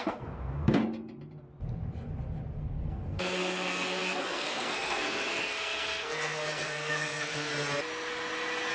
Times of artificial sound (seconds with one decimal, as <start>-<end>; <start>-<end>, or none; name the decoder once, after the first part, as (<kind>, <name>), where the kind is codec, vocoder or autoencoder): 0.0-0.8 (codec, SNAC); 2.6-7.5